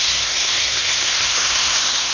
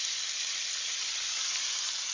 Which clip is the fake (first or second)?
first